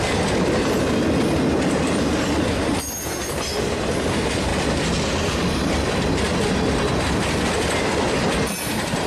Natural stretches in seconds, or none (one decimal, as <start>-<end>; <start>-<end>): 0.0-9.1